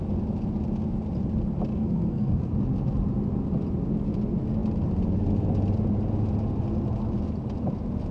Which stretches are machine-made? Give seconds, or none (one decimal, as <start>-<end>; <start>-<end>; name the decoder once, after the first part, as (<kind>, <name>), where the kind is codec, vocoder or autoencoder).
1.7-2.5 (codec, SNAC)